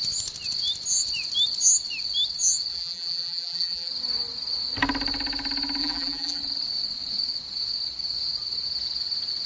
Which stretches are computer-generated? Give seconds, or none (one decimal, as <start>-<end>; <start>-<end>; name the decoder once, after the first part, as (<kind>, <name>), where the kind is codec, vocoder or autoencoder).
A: 2.7-3.9 (vocoder, BigVGAN v2); 5.8-6.4

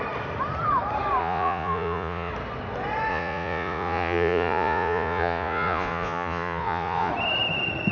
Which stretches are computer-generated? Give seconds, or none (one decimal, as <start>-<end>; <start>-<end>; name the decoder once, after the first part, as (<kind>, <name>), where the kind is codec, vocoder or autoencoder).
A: 1.2-2.3 (vocoder, Vocos); 3.1-7.1

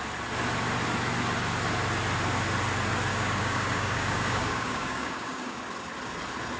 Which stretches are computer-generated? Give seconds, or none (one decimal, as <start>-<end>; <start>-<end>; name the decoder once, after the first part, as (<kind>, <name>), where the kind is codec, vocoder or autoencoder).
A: 3.1-5.6 (codec, DAC)

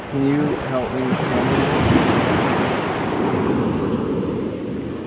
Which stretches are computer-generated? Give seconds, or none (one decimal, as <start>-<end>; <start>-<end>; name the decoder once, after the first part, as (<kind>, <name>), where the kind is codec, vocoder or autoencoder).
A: none

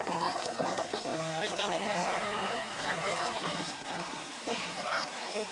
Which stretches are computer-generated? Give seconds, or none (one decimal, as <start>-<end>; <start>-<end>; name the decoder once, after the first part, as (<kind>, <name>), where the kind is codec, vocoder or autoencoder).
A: 0.0-5.5 (codec, SNAC)